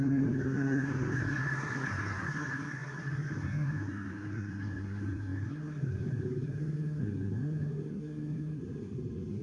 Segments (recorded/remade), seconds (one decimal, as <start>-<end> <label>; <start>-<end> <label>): 0.0-9.4 remade